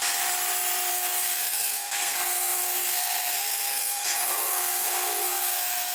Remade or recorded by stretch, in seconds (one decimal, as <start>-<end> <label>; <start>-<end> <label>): 0.0-0.9 recorded; 0.9-5.9 remade